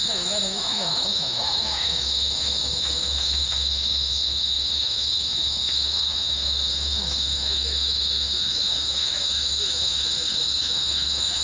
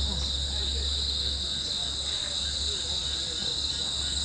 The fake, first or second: first